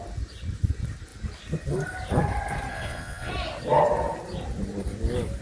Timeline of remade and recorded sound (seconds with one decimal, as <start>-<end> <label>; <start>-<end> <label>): 0.0-2.7 recorded; 2.7-3.3 remade; 3.3-5.4 recorded